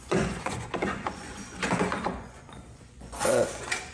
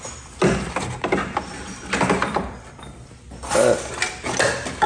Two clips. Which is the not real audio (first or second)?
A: first